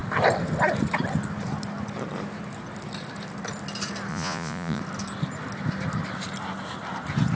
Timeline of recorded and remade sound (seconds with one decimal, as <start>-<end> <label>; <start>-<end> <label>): 0.0-4.1 recorded; 4.1-4.8 remade; 4.8-7.4 recorded

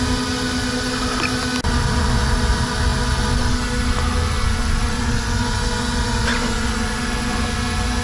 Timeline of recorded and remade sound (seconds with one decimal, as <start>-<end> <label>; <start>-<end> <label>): 0.0-8.0 recorded

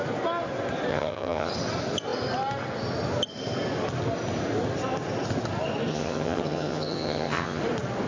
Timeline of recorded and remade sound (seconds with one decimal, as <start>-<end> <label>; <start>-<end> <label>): 0.0-0.9 recorded; 0.9-1.5 remade; 1.5-5.9 recorded; 5.9-7.6 remade; 7.6-8.1 recorded

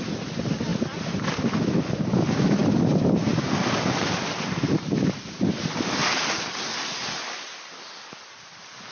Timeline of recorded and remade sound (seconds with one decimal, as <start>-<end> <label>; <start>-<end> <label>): 0.0-8.9 recorded

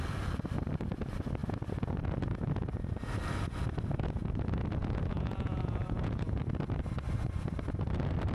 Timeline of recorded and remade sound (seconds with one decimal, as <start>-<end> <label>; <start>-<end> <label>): 0.0-4.8 recorded; 4.8-6.4 remade; 6.4-8.3 recorded